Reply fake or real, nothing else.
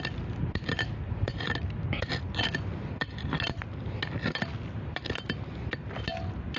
real